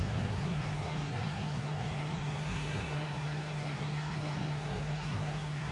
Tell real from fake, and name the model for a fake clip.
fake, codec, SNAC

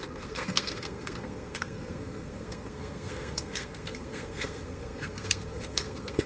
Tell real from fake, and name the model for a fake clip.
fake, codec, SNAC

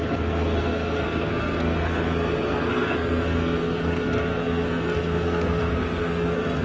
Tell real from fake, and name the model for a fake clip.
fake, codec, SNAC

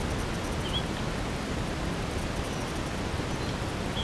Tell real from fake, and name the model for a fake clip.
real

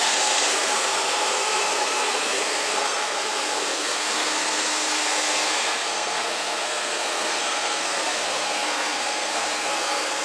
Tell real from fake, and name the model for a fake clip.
fake, codec, SNAC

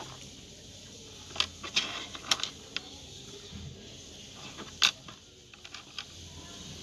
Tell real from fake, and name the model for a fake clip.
real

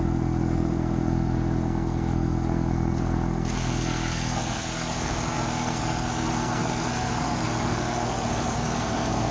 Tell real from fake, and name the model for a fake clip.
fake, codec, SNAC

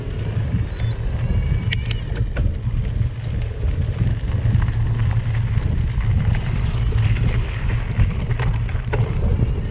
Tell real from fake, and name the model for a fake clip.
real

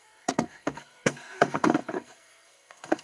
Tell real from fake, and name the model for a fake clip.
fake, codec, SNAC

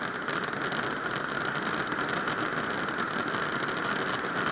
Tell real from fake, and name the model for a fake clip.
real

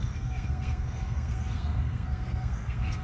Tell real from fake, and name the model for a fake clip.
fake, codec, SNAC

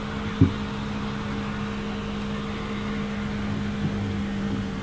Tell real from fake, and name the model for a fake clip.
real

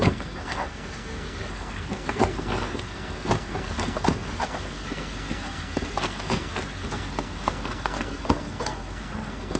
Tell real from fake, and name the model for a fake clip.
fake, codec, SNAC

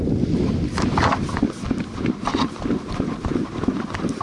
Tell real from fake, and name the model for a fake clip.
real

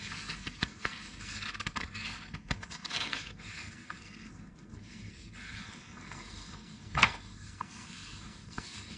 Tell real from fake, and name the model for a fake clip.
fake, codec, SNAC